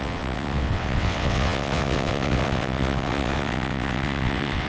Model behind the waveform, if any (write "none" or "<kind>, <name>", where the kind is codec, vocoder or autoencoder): vocoder, WaveNeXt